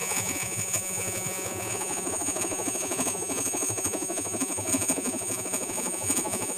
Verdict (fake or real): fake